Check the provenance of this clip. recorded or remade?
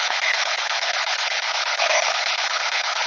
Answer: remade